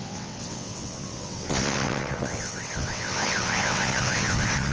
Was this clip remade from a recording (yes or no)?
yes